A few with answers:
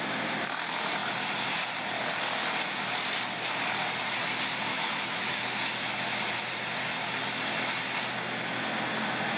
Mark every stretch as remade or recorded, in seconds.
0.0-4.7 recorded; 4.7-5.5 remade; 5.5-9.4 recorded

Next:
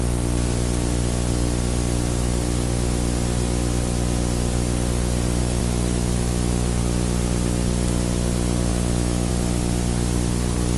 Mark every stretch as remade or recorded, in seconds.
0.0-5.4 recorded; 5.4-6.8 remade; 6.8-8.7 recorded; 8.7-9.3 remade; 9.3-10.8 recorded

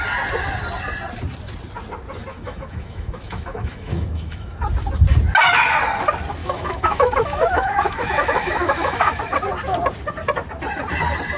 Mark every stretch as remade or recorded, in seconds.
0.0-2.3 recorded; 2.3-4.6 remade; 4.6-6.4 recorded; 6.4-9.2 remade; 9.2-11.4 recorded